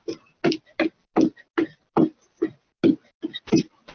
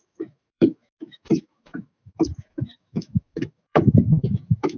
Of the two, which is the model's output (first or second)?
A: second